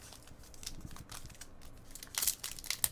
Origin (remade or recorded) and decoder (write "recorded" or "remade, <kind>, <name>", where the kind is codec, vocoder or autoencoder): recorded